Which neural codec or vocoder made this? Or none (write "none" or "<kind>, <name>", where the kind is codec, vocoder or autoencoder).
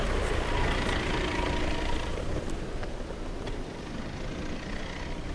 vocoder, BigVGAN v2